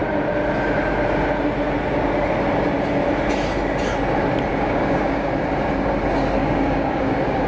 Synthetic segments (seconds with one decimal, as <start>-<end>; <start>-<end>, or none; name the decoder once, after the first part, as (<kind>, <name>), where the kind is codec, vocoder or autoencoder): 4.5-5.3 (codec, DAC); 6.4-7.5